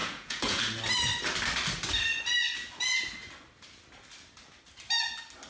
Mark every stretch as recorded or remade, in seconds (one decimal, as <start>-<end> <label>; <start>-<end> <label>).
0.0-0.6 remade; 0.6-5.5 recorded

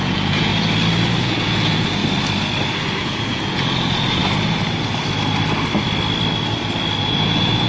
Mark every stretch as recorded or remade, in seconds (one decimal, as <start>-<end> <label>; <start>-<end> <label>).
0.0-0.5 remade; 0.5-1.2 recorded; 1.2-2.0 remade; 2.0-3.0 recorded; 3.0-4.2 remade; 4.2-7.0 recorded; 7.0-7.7 remade

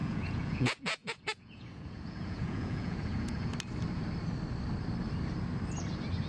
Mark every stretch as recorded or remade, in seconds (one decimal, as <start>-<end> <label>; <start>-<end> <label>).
0.0-3.5 remade; 3.5-6.3 recorded

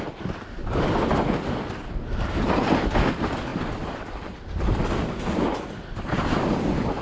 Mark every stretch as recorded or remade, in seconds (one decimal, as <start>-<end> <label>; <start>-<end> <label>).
0.0-7.0 recorded